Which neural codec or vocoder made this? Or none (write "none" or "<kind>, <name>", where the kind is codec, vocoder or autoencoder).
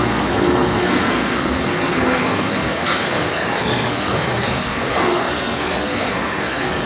codec, SNAC